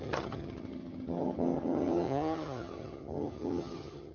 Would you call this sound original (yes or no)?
no